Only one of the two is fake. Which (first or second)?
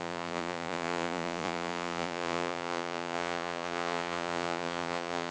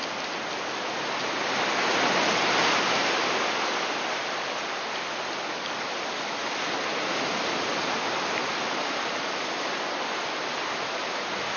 first